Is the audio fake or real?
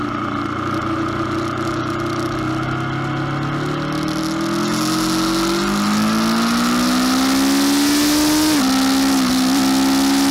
real